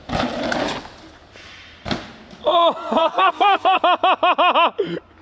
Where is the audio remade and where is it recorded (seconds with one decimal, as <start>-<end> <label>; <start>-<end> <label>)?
0.0-3.0 recorded; 3.0-3.8 remade; 3.8-5.2 recorded